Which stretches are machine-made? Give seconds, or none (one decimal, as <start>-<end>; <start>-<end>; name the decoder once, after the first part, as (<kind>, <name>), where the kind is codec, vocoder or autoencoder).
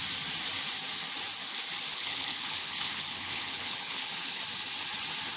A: 1.9-4.4 (codec, HILCodec)